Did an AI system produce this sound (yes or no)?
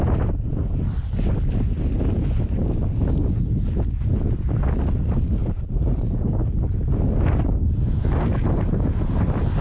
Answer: no